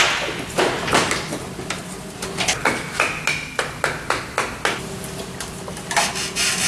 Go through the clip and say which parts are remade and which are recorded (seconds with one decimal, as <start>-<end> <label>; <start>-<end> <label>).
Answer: 0.0-6.7 recorded